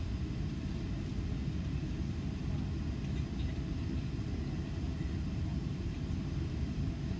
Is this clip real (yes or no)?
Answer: yes